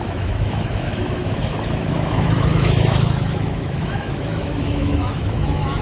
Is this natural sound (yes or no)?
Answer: no